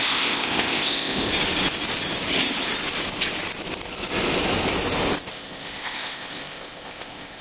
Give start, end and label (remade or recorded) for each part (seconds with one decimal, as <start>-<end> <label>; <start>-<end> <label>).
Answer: 0.0-1.3 remade; 1.3-5.3 recorded; 5.3-7.4 remade